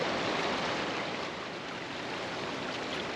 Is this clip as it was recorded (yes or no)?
yes